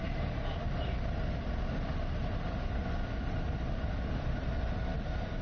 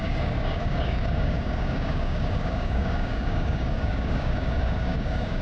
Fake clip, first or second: second